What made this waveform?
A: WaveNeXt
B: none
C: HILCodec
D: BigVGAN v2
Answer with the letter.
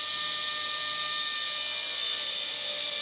B